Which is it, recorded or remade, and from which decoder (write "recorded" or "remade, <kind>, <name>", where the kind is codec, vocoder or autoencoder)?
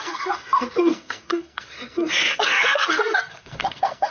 remade, codec, SNAC